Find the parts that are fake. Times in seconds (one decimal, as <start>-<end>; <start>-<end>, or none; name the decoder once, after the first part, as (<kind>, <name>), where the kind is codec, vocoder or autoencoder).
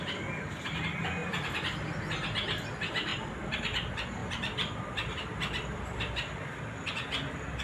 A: 1.2-1.9 (vocoder, BigVGAN v2); 3.1-3.6; 4.2-6.6